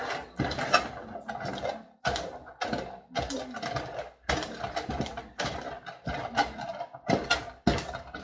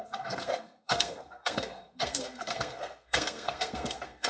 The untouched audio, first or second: first